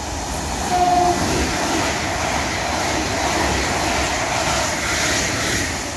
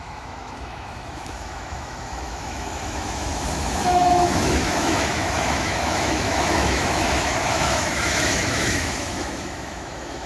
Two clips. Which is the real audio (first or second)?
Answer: first